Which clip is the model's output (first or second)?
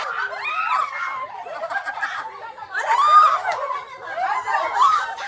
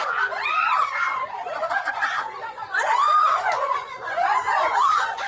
second